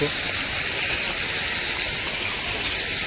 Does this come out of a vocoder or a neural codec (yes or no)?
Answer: no